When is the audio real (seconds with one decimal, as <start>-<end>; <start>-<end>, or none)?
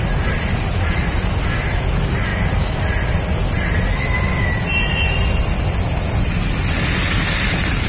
0.0-7.9